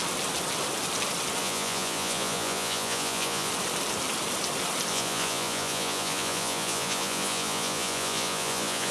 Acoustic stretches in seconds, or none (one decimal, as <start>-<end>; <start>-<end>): 0.0-1.4; 3.5-4.9